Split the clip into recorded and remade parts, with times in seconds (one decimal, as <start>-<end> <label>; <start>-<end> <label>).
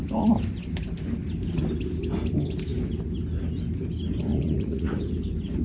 0.0-4.3 recorded; 4.3-5.0 remade; 5.0-5.6 recorded